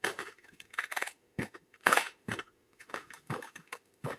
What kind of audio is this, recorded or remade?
remade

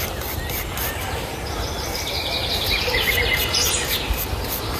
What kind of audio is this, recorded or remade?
remade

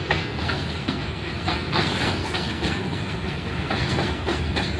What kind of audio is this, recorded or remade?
remade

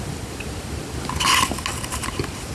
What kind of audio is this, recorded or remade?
recorded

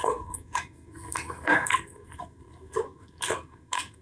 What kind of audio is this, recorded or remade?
remade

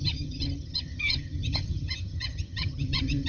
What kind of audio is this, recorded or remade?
remade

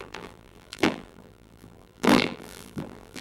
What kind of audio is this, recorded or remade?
remade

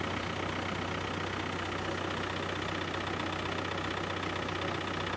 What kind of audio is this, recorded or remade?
recorded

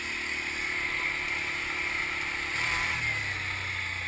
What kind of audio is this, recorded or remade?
recorded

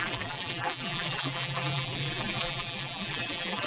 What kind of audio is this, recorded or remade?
remade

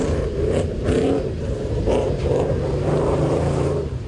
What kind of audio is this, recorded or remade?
remade